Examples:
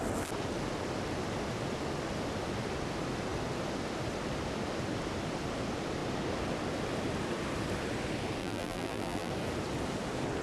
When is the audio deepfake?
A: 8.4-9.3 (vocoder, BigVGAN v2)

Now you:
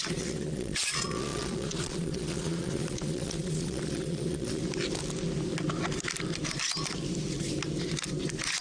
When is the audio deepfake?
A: 0.0-4.6 (vocoder, Vocos)

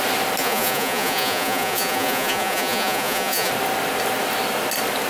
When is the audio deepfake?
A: 0.4-3.5 (vocoder, Vocos)

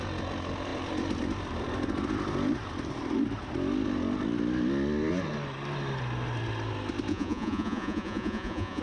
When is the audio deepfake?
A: 7.1-8.8 (vocoder, Vocos)

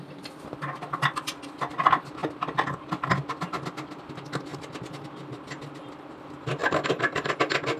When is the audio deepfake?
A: 6.6-7.3 (vocoder, BigVGAN v2)

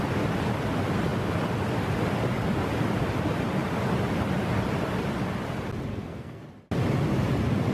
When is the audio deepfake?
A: 5.9-6.4 (codec, SNAC)

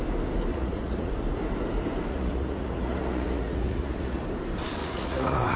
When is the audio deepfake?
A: 0.5-1.1 (vocoder, Vocos); 2.1-4.2; 4.8-5.6

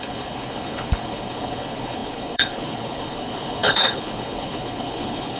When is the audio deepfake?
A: 0.0-5.4 (codec, HILCodec)